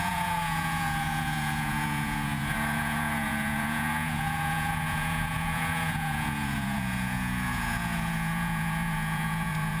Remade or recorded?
remade